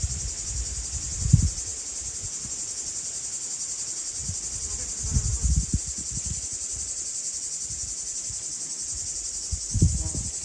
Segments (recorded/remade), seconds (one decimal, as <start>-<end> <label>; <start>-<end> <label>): 0.0-10.4 recorded